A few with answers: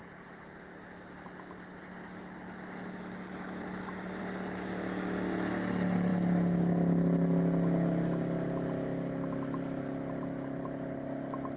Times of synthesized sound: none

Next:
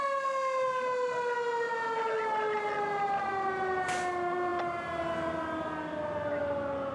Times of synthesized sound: none